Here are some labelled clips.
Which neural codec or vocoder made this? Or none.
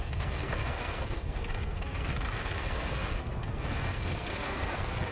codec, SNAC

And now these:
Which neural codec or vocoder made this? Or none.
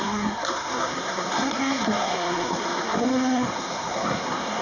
codec, SNAC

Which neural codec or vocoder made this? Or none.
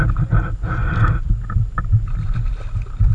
none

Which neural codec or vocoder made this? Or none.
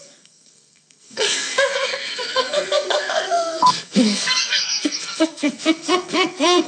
codec, SNAC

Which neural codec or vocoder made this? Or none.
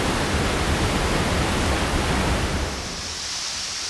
none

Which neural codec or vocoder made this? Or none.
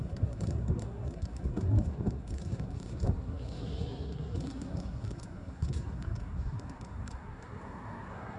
codec, SNAC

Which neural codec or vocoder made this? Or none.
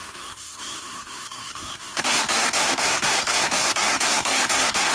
codec, SNAC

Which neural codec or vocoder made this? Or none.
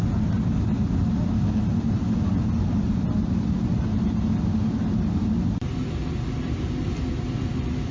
none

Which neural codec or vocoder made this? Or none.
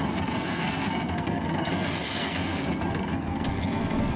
codec, SNAC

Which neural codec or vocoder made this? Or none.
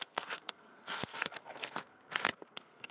codec, SNAC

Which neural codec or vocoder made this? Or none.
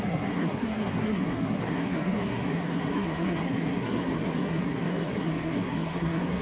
codec, SNAC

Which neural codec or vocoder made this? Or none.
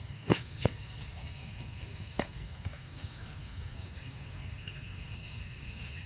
codec, SNAC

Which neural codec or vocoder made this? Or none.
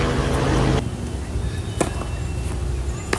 none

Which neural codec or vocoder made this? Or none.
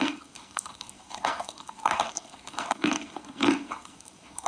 codec, SNAC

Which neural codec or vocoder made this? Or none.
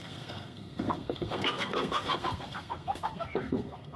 codec, SNAC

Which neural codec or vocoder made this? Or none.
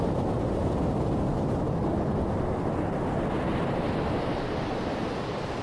none